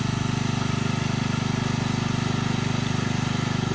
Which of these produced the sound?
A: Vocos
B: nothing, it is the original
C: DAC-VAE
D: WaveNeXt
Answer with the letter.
B